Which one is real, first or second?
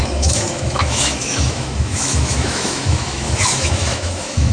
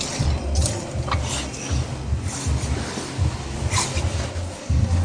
second